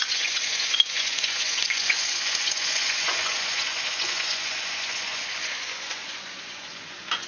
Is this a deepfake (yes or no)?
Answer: yes